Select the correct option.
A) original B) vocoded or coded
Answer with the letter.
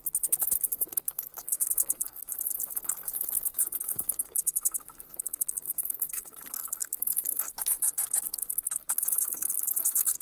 B